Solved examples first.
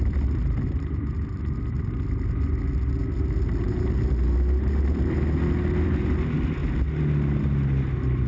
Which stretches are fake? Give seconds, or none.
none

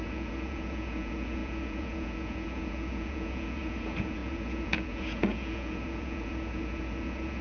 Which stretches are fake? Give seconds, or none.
0.0-7.4 (vocoder, Vocos)

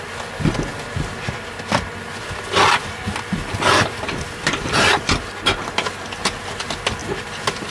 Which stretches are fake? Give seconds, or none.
0.7-5.3 (vocoder, BigVGAN v2); 7.0-7.7

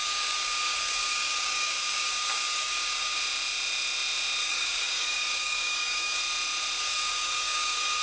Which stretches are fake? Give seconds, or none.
0.0-3.2 (codec, DAC); 4.4-6.2; 6.8-8.0